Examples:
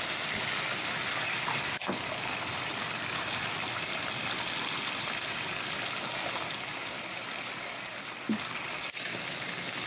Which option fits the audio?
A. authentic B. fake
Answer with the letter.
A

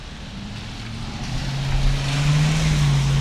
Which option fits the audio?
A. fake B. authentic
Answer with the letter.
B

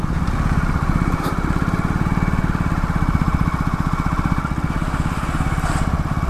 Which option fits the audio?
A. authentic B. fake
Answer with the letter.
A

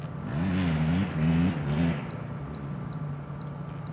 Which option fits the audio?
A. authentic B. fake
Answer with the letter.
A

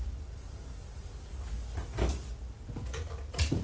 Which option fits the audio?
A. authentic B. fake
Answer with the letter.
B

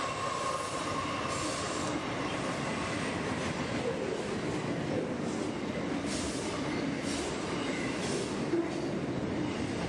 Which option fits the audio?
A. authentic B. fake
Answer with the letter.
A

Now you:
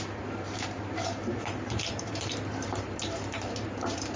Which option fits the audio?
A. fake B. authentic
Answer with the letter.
A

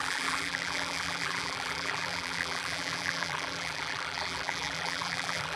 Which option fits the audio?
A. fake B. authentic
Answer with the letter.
A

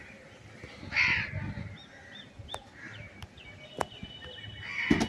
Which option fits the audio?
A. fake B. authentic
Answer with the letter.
B